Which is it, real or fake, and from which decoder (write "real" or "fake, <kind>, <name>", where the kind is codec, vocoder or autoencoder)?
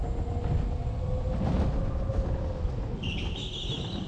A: real